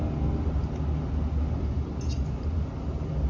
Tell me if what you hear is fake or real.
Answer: real